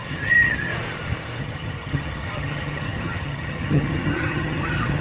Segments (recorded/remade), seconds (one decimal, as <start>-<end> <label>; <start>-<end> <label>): 0.0-0.7 remade; 0.7-1.4 recorded; 1.4-5.0 remade